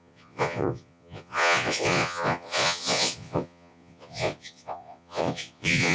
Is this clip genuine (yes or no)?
no